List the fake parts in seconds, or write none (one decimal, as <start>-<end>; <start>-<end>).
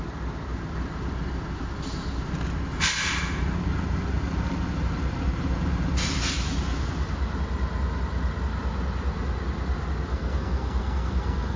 10.1-11.6